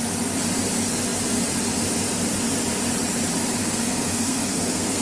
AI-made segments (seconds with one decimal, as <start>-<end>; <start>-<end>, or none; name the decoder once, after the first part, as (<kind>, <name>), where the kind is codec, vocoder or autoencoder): 3.6-5.0 (codec, SNAC)